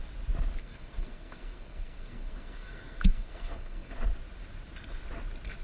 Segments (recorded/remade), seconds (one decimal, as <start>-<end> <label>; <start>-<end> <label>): 0.0-0.6 recorded; 0.6-3.9 remade; 3.9-5.6 recorded